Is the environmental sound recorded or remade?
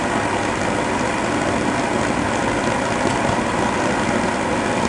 recorded